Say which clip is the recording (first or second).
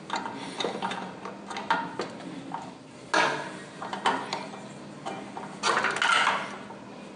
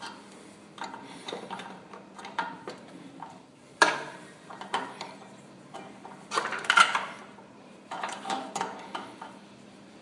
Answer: first